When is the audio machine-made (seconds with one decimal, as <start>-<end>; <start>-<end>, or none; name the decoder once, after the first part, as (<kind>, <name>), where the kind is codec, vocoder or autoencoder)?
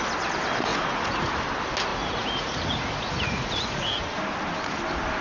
0.7-1.3 (vocoder, Vocos); 1.9-4.0